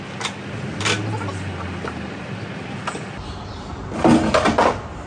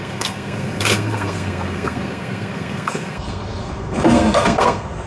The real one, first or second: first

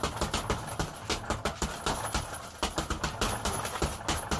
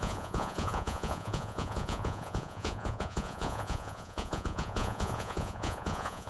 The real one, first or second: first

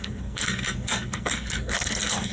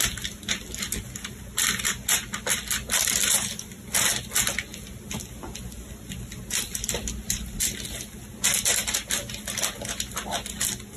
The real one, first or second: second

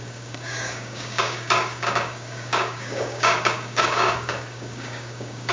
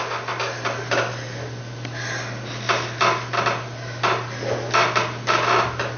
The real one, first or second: second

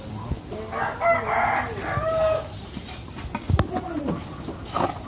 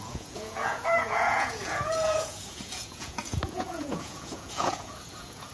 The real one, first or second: first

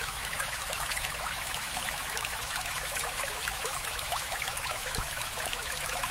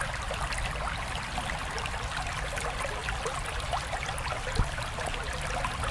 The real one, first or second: second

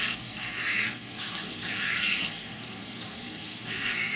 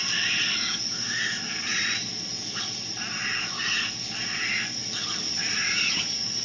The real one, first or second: second